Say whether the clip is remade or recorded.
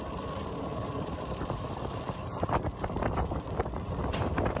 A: remade